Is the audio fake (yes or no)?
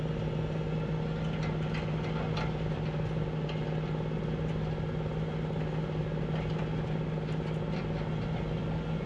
no